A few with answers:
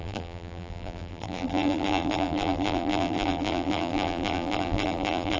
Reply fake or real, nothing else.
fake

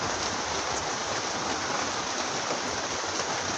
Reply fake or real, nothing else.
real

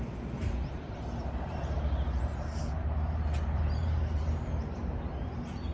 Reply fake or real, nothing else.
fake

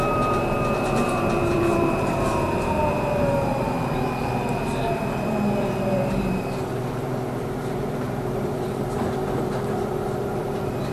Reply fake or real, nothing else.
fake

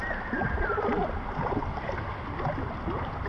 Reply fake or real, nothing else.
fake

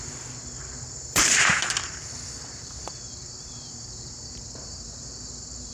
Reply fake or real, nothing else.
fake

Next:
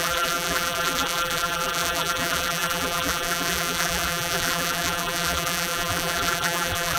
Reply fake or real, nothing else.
fake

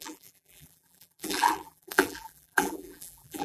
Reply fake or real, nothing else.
fake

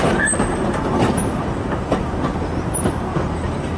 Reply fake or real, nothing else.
fake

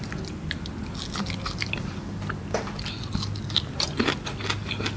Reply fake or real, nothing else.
real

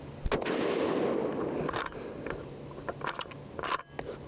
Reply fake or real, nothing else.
real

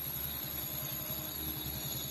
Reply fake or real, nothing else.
real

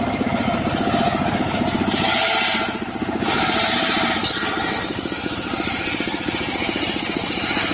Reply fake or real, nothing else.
fake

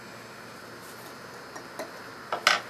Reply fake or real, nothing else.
real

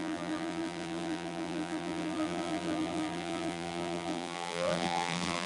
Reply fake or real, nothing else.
fake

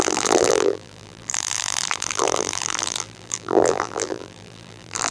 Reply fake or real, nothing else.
fake